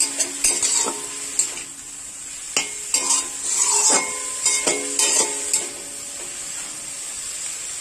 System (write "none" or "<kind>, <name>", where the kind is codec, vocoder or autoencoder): none